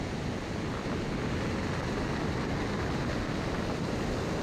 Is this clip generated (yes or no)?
no